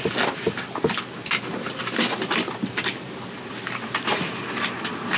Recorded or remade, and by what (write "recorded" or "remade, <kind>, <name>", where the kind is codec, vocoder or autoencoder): recorded